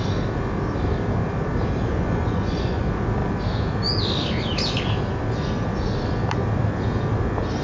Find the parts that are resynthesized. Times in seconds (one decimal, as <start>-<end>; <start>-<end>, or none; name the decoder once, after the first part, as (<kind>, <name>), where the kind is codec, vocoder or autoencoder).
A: 1.9-2.8 (vocoder, Vocos)